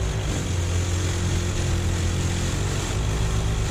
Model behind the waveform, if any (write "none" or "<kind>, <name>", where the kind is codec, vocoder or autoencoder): none